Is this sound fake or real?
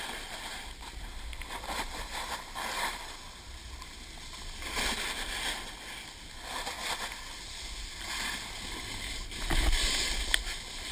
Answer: real